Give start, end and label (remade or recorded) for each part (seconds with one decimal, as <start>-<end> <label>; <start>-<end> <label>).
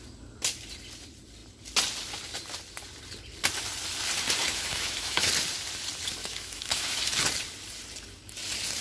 0.0-4.4 recorded; 4.4-5.3 remade; 5.3-6.2 recorded; 6.2-7.0 remade; 7.0-8.8 recorded